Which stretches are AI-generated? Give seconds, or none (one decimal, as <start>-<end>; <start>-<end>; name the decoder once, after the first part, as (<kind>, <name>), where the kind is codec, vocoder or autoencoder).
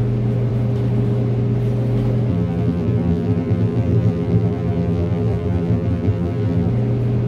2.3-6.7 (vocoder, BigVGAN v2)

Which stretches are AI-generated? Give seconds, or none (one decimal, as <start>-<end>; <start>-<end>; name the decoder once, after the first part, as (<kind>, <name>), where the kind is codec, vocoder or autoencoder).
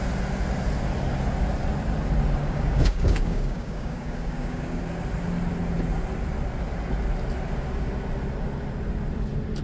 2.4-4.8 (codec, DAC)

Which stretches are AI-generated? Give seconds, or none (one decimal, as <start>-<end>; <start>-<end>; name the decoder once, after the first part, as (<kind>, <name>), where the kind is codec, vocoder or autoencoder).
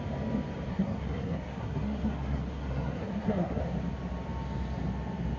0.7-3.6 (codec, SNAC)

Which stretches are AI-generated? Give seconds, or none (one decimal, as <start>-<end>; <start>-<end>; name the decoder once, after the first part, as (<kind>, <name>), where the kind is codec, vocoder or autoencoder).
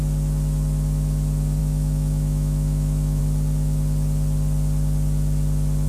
1.6-3.2 (autoencoder, DAC-VAE)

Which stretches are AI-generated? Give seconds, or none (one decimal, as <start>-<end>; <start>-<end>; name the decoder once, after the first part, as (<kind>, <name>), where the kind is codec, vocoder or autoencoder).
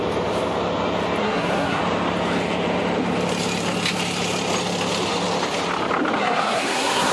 1.2-1.8 (codec, SNAC); 6.2-7.1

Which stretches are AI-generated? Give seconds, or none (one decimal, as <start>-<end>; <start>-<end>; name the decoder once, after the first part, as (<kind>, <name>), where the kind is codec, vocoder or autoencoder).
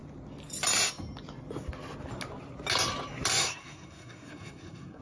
3.4-5.0 (codec, SNAC)